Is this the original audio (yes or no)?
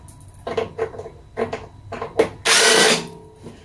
yes